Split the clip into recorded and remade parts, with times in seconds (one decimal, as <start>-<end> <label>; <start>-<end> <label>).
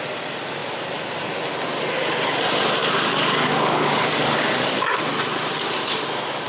0.0-2.8 recorded; 2.8-5.0 remade; 5.0-6.5 recorded